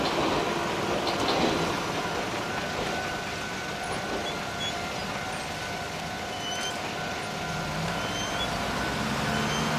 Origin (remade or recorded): recorded